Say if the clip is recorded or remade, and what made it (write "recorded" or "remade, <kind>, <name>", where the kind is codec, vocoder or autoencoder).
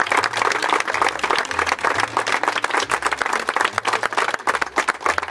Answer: recorded